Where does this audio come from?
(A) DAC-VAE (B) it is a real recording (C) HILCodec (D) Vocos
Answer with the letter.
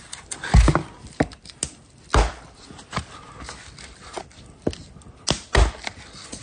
B